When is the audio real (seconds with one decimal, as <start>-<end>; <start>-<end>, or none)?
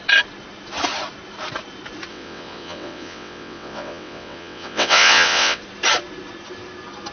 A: 0.0-2.1; 5.6-7.1